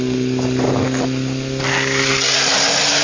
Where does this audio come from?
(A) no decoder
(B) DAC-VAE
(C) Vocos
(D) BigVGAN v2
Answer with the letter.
A